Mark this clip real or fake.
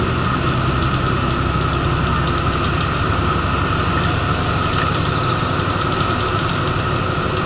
real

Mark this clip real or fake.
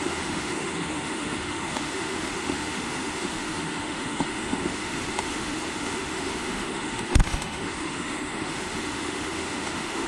fake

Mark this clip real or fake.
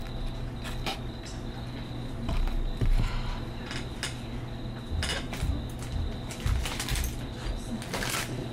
real